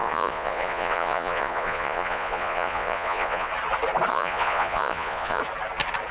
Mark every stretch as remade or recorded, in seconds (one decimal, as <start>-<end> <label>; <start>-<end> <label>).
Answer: 0.0-3.5 remade; 3.5-4.1 recorded; 4.1-5.4 remade; 5.4-6.1 recorded